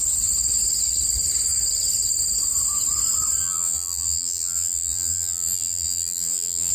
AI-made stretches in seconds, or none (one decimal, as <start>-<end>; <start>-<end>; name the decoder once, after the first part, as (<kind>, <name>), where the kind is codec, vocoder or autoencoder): 3.4-6.7 (vocoder, BigVGAN v2)